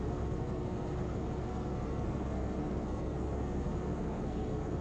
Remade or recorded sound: remade